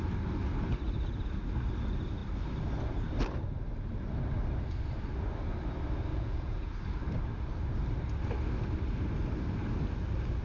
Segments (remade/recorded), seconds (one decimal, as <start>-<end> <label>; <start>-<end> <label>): 0.0-6.1 recorded; 6.1-6.7 remade; 6.7-10.4 recorded